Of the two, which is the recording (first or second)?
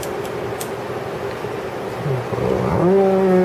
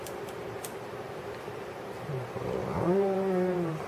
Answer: first